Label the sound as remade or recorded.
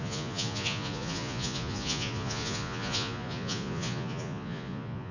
remade